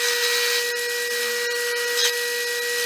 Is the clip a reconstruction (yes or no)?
no